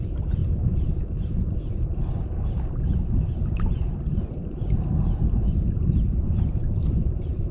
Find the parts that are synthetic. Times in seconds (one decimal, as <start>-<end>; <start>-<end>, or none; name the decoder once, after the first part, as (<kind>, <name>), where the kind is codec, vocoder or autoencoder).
none